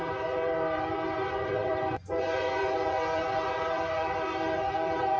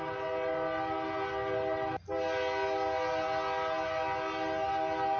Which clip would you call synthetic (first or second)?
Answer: first